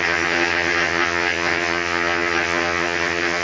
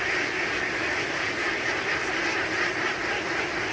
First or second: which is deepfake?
first